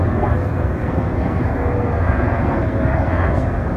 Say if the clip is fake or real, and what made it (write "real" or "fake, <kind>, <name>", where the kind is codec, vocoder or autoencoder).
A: fake, codec, SNAC